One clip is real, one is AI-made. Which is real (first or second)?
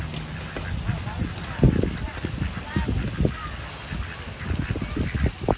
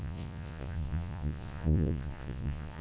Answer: first